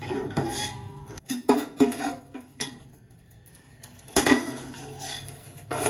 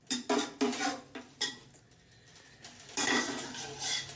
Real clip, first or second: second